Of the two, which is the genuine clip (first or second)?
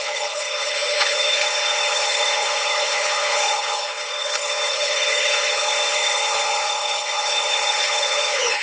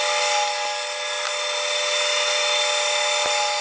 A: second